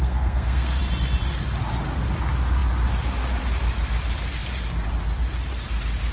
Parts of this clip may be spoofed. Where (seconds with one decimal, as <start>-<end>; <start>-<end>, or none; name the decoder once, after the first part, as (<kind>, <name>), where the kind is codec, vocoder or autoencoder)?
0.0-0.8 (codec, SNAC)

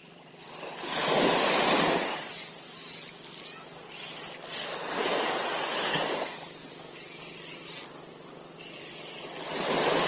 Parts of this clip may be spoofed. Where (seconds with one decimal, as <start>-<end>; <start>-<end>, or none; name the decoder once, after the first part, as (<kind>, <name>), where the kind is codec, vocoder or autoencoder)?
0.0-2.3 (vocoder, BigVGAN v2)